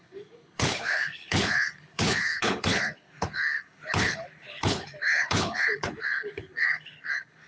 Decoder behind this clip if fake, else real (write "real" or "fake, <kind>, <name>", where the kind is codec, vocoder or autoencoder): fake, codec, HILCodec